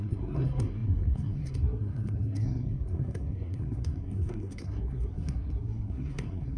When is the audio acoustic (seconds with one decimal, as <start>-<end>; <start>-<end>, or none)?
none